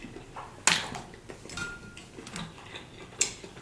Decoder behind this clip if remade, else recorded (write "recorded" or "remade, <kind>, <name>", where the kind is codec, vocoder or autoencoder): recorded